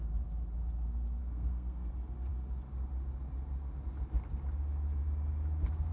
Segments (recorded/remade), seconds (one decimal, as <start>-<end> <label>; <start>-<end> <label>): 0.0-1.2 recorded; 1.2-1.9 remade; 1.9-5.9 recorded

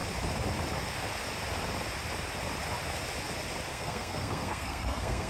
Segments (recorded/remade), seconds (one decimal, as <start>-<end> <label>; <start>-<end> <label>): 0.0-3.7 recorded; 3.7-5.3 remade

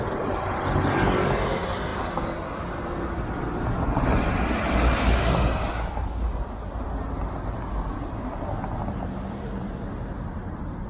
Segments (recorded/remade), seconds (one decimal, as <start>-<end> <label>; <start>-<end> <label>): 0.0-10.9 recorded

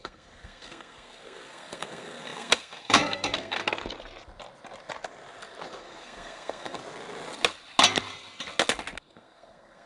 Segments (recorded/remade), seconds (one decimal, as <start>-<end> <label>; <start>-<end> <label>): 0.0-3.6 remade; 3.6-5.8 recorded; 5.8-6.8 remade; 6.8-9.0 recorded; 9.0-9.9 remade

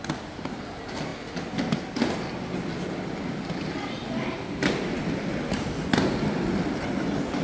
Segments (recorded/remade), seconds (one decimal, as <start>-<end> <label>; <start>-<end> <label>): 0.0-7.4 recorded

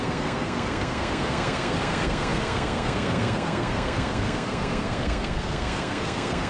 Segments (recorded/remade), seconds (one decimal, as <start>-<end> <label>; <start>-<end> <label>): 0.0-6.5 remade

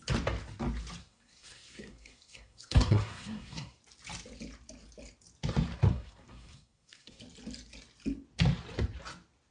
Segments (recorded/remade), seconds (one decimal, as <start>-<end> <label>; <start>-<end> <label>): 0.0-1.0 recorded; 1.0-3.8 remade; 3.8-5.9 recorded; 5.9-7.2 remade; 7.2-9.5 recorded